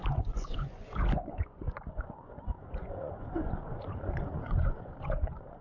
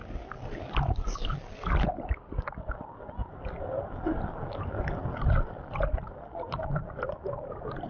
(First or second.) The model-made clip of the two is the first